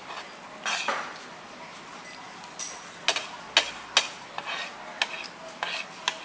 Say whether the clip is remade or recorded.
recorded